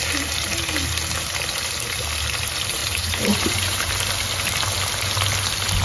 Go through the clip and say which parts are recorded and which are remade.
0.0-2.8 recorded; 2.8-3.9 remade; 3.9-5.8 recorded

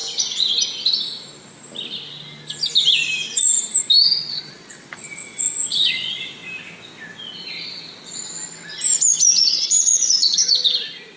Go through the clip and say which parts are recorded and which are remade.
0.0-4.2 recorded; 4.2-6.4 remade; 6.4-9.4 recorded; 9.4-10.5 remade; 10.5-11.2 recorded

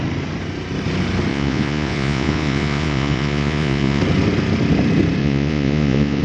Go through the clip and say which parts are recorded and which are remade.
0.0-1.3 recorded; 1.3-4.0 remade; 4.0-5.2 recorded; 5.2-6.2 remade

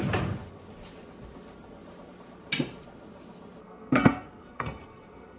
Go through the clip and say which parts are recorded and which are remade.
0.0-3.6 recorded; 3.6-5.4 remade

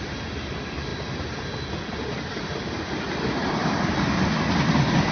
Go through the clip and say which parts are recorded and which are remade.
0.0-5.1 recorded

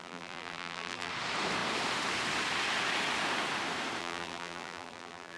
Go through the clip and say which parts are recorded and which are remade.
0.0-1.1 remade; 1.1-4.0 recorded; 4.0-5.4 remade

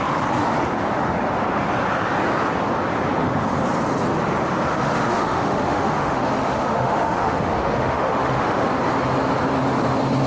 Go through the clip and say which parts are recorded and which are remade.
0.0-4.7 recorded; 4.7-8.7 remade; 8.7-10.3 recorded